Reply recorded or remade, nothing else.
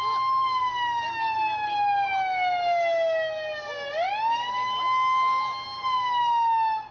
recorded